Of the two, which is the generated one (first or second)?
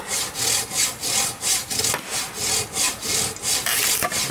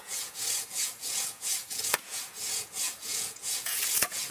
second